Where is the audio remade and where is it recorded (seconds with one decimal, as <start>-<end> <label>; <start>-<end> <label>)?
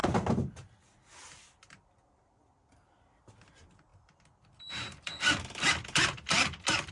0.0-6.9 recorded